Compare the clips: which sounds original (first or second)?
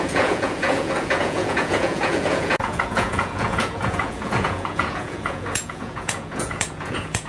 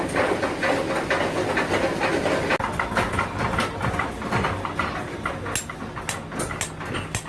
second